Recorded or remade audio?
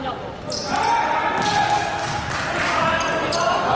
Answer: recorded